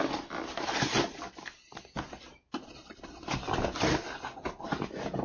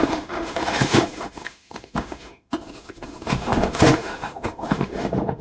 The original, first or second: first